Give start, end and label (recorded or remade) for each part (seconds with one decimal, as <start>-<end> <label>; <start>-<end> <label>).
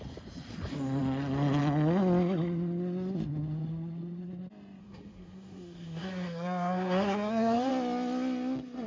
0.0-4.8 recorded; 4.8-7.7 remade; 7.7-8.9 recorded